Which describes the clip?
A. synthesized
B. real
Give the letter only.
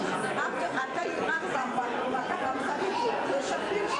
A